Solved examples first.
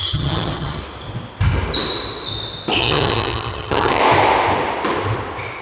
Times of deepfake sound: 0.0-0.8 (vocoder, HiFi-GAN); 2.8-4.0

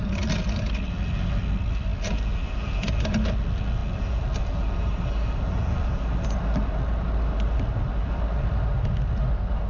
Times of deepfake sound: none